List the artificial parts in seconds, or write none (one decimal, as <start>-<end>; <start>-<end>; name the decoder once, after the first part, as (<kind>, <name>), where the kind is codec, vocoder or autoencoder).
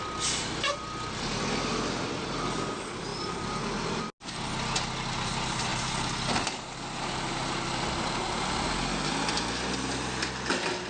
none